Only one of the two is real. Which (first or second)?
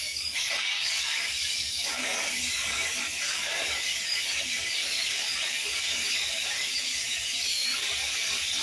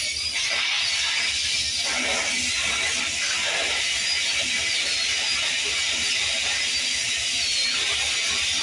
second